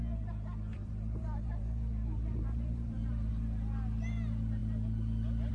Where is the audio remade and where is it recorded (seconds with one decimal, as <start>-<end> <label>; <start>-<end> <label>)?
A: 0.0-0.7 recorded; 0.7-3.3 remade; 3.3-5.5 recorded